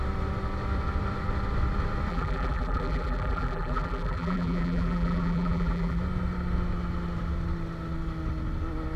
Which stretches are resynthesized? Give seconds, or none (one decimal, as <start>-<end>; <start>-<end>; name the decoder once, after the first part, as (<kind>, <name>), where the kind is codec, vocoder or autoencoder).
2.1-6.0 (vocoder, BigVGAN v2)